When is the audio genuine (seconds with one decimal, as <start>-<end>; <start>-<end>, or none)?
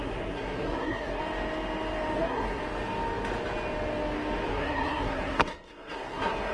1.2-2.2; 2.6-4.5